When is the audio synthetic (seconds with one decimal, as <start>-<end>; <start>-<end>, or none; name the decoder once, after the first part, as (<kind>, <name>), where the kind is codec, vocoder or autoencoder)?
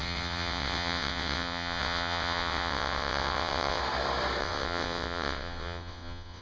0.0-3.8 (vocoder, WaveNeXt); 4.4-6.4